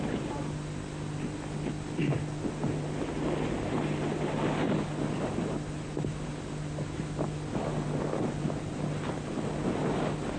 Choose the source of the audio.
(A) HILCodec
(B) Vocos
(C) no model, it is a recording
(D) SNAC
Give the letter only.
C